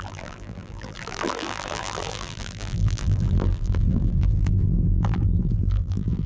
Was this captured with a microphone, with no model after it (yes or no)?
no